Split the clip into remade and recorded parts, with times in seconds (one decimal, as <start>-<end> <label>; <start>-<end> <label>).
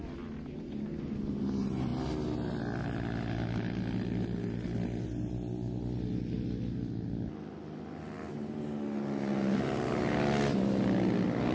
0.0-11.5 recorded